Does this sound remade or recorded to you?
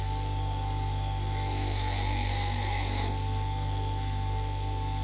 remade